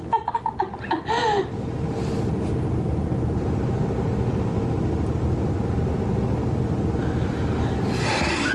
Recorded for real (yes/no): yes